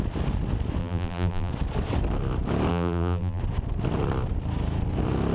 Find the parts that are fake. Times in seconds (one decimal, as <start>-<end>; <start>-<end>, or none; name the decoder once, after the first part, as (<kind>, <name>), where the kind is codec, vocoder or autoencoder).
0.8-1.5 (vocoder, BigVGAN v2); 2.7-3.4